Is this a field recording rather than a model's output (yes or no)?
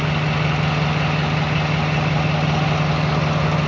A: yes